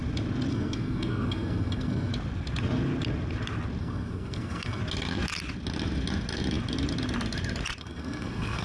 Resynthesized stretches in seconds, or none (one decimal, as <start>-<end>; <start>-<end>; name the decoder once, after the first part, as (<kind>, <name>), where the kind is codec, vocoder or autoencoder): 0.5-2.1 (codec, SNAC); 3.8-4.8; 7.8-8.6